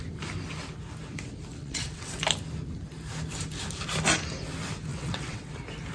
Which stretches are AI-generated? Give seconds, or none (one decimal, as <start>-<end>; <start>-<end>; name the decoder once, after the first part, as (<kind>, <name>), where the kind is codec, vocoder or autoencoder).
1.6-2.2 (vocoder, WaveNeXt); 4.9-5.5